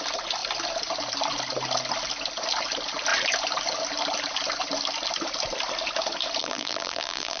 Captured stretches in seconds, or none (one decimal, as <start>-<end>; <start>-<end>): 0.0-6.4